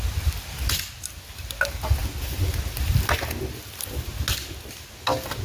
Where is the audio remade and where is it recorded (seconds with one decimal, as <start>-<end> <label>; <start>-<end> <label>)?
0.0-5.4 recorded